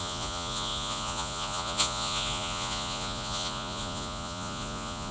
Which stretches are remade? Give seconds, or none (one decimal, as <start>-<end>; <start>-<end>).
0.0-5.1

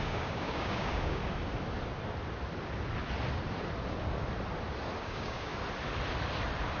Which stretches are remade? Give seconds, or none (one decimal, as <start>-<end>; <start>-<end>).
0.0-1.2; 5.0-5.5